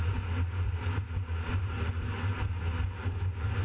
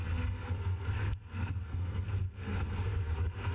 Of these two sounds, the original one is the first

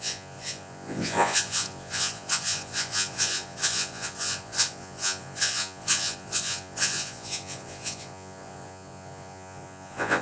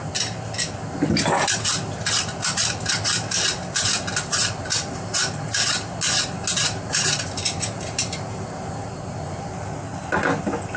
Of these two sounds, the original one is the second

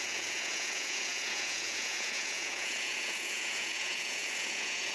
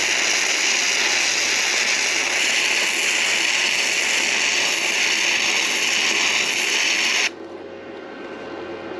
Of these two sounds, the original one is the second